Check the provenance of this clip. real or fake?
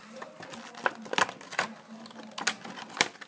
real